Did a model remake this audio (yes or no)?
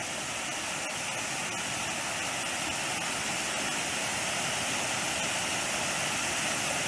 no